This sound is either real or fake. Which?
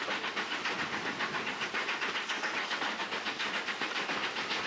real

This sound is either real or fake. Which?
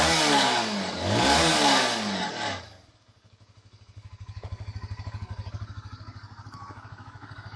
fake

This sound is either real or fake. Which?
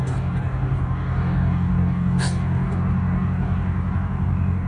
fake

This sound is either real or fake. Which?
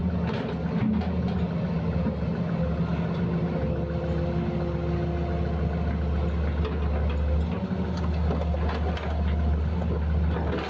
real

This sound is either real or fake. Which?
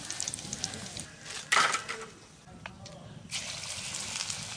real